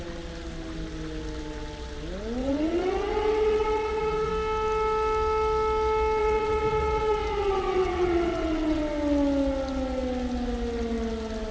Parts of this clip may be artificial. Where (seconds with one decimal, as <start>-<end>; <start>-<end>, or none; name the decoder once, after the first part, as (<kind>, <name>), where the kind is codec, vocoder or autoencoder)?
2.4-4.3 (vocoder, WaveNeXt); 6.2-8.8